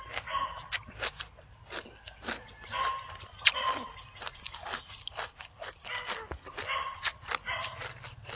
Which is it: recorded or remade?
recorded